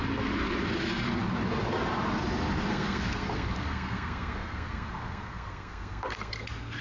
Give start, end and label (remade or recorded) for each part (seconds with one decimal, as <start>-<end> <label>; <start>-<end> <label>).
0.0-2.7 recorded; 2.7-6.8 remade